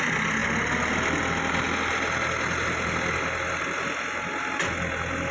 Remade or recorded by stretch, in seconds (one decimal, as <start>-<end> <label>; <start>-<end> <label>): 0.0-5.3 recorded